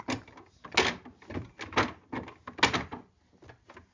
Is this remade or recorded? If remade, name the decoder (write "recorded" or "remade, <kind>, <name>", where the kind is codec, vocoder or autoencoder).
recorded